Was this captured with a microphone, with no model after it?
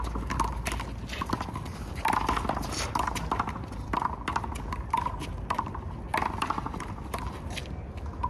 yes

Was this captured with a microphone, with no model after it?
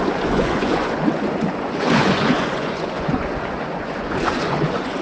no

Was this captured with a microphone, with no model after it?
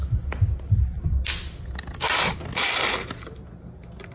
yes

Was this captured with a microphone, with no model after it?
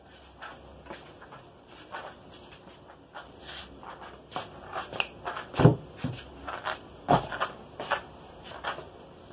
yes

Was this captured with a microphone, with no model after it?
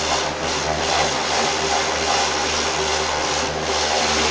yes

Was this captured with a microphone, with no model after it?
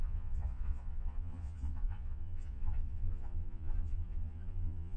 no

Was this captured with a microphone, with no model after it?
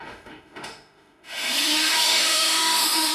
no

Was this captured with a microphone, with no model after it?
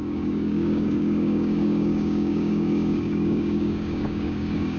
no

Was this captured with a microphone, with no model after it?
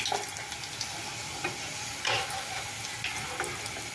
yes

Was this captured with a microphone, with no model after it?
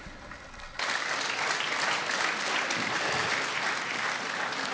yes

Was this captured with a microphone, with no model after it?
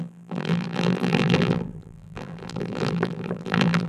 no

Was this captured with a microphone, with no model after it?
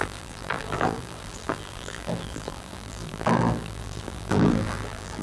no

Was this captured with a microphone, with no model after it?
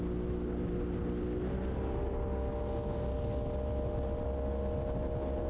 yes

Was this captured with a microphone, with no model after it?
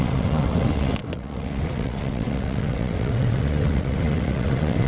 no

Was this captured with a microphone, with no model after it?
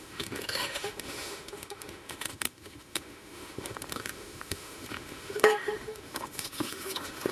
no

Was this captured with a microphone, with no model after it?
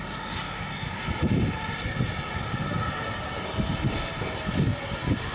yes